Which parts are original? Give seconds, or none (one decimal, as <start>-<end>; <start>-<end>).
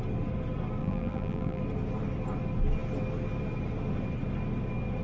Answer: 0.0-0.8; 1.6-5.0